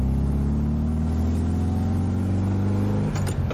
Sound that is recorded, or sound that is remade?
recorded